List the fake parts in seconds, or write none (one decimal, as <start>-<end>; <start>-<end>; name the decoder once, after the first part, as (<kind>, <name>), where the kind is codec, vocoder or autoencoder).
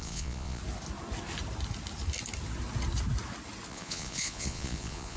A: 0.0-0.6 (vocoder, Vocos); 3.7-5.2